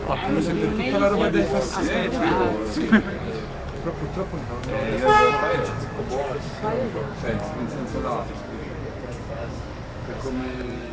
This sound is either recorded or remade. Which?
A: remade